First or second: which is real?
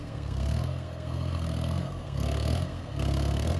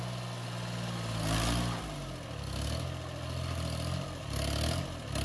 second